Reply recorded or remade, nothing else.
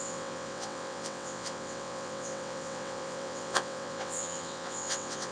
remade